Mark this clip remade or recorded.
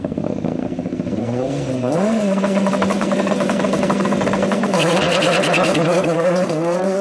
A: remade